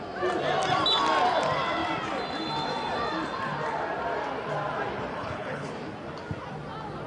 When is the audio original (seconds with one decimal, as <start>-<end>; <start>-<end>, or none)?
0.0-5.1; 5.7-7.1